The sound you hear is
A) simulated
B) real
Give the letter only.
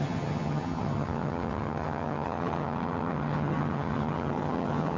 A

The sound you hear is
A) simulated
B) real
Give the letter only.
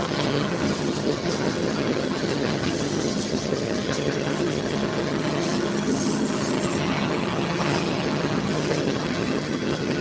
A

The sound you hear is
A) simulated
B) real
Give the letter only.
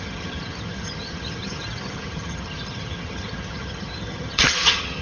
A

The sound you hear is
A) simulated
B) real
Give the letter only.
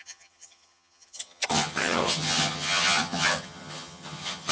A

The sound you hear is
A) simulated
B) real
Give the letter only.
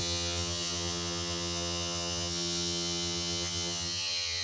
A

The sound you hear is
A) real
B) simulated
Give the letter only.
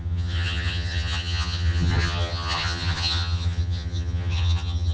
B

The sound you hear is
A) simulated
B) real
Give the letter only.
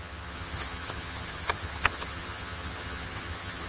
A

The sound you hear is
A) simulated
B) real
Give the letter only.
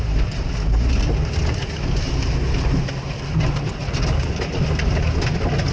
B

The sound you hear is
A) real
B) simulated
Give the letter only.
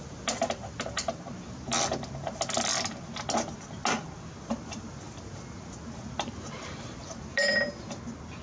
A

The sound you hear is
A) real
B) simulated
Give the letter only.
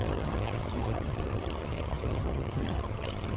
B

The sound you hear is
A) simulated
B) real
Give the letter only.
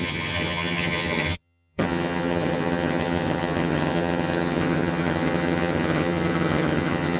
A